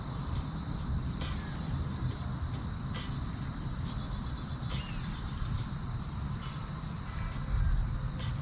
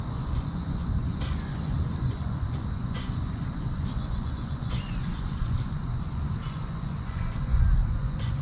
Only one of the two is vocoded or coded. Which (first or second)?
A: second